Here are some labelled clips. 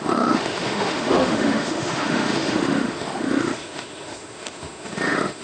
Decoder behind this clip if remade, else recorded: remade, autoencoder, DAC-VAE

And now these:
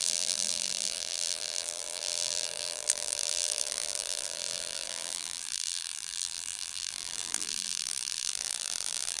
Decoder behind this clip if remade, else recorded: remade, vocoder, BigVGAN v2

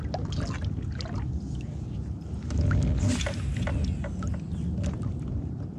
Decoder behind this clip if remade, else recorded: recorded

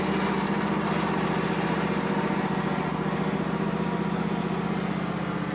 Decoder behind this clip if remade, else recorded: recorded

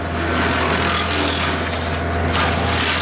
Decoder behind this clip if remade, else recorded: recorded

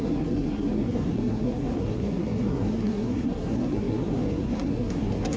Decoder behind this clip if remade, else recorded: remade, codec, SNAC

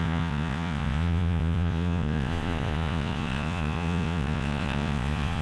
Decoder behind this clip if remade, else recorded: remade, vocoder, Vocos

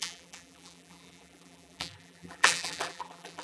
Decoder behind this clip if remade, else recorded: remade, vocoder, BigVGAN v2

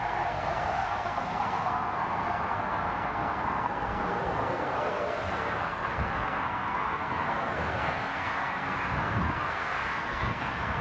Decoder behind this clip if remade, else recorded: remade, codec, SNAC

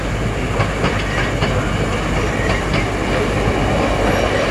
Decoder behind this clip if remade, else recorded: recorded